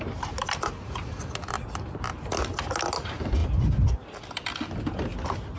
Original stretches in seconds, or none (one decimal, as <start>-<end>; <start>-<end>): 0.0-5.6